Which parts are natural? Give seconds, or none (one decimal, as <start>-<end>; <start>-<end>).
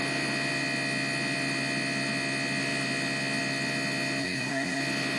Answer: 0.0-4.2; 4.8-5.2